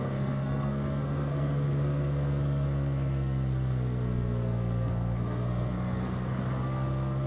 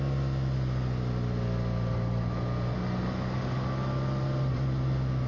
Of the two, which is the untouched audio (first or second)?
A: second